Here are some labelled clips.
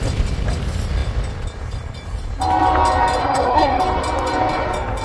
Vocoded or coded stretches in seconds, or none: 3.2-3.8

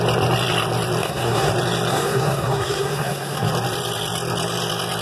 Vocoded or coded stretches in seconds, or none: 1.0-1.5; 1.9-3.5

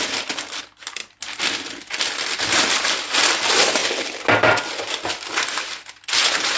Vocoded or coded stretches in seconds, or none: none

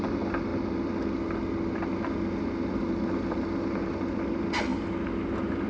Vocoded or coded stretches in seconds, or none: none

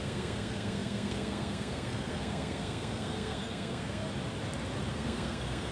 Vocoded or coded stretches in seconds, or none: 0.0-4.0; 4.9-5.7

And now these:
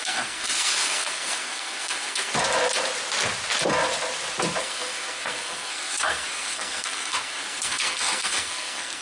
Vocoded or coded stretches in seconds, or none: 0.0-2.3; 4.6-9.0

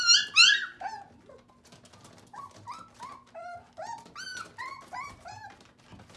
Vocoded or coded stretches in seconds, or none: none

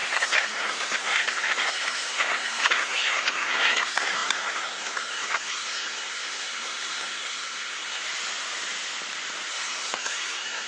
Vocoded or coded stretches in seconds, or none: 0.0-8.0; 9.5-10.7